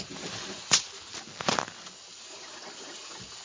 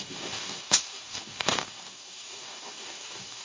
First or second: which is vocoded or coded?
second